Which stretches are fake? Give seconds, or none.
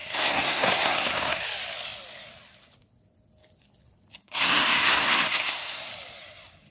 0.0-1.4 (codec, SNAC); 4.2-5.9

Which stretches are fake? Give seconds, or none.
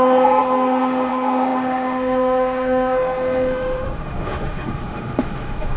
0.0-5.8 (autoencoder, DAC-VAE)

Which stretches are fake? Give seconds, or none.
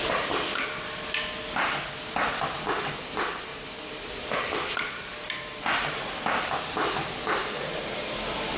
none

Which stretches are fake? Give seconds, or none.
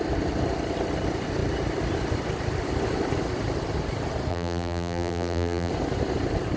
4.3-5.7 (vocoder, BigVGAN v2)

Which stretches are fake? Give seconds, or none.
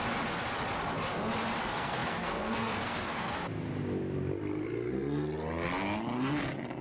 1.6-3.4 (codec, SNAC)